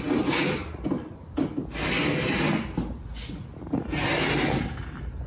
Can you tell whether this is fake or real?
real